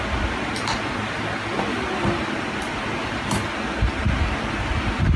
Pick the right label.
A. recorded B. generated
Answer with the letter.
A